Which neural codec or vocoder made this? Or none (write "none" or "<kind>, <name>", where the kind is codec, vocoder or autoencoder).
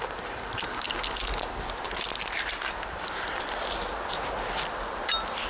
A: none